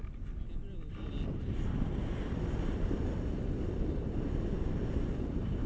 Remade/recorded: recorded